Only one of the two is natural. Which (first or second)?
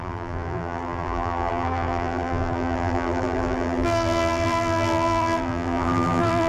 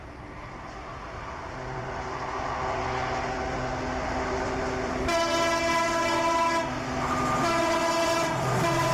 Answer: second